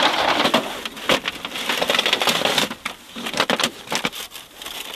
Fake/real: real